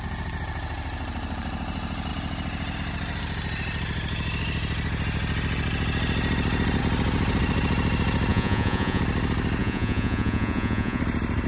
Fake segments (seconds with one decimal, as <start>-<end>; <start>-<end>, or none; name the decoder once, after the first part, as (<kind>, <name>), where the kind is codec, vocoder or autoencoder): 8.3-9.0 (vocoder, Vocos); 9.6-11.0